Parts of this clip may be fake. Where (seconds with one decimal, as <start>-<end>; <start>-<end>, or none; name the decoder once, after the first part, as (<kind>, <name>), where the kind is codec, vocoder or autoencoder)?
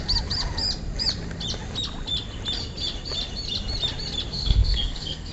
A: 4.3-5.3 (codec, SNAC)